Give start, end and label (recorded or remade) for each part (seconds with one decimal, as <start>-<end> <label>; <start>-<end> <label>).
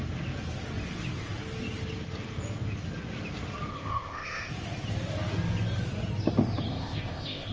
0.0-3.7 recorded; 3.7-4.5 remade; 4.5-6.7 recorded; 6.7-7.5 remade